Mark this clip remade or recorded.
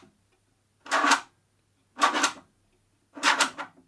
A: recorded